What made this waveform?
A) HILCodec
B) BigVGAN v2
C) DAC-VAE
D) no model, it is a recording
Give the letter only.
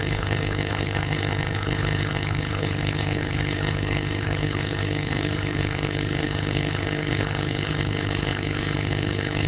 A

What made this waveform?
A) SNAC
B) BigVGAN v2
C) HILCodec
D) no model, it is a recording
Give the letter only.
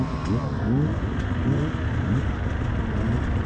D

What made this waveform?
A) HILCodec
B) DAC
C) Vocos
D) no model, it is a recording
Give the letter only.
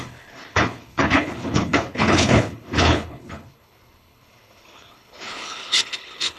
A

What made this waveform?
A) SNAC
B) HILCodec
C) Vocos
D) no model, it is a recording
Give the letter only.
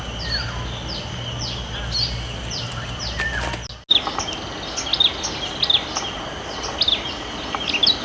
D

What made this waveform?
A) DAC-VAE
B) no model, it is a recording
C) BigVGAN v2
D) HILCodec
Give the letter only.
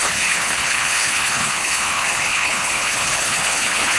D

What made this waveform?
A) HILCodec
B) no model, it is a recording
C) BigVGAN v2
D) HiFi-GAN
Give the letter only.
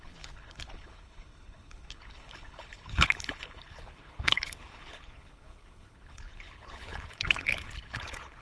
A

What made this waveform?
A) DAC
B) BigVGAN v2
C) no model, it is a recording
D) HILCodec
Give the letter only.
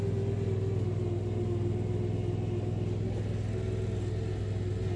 C